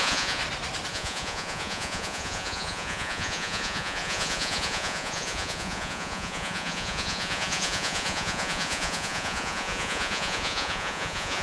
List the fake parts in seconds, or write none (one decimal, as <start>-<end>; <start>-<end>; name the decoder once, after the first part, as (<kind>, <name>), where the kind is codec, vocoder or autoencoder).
0.0-0.4 (vocoder, Vocos); 0.9-11.4